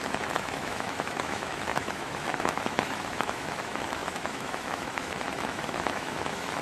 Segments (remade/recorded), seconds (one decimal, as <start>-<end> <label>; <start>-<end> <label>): 0.0-6.6 remade